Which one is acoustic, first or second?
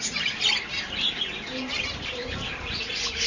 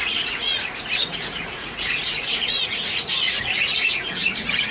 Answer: first